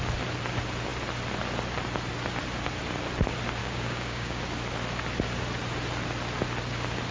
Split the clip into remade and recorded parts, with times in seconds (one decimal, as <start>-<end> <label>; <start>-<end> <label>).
0.0-3.6 recorded; 3.6-4.4 remade; 4.4-7.1 recorded